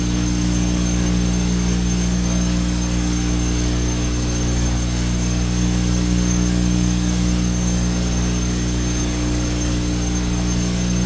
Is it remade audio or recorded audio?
remade